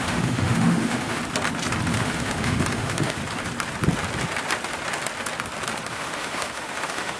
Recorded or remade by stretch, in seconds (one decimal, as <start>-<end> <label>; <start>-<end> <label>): 0.0-1.2 remade; 1.2-1.9 recorded; 1.9-3.2 remade; 3.2-5.9 recorded; 5.9-7.2 remade